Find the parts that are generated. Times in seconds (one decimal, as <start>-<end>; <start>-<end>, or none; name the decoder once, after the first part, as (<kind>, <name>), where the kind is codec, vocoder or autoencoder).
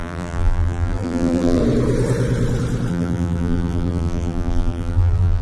0.0-1.6 (vocoder, BigVGAN v2); 2.9-5.4